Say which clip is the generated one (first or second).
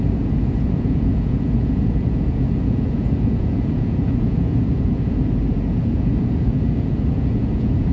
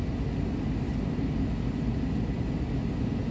first